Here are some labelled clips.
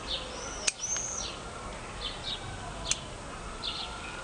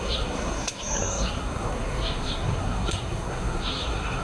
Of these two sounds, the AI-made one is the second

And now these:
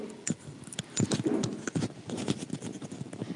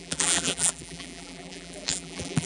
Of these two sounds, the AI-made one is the second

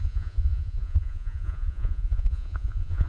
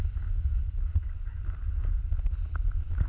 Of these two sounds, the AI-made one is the first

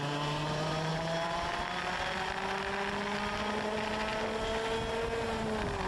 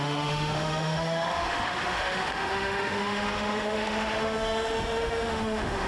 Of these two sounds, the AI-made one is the second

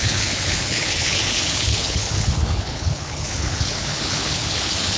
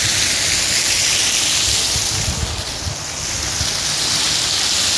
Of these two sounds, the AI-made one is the first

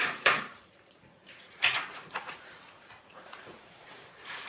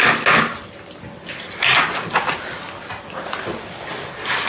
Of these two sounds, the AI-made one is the first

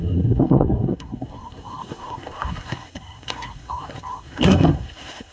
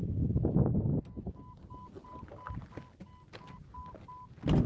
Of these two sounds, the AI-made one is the first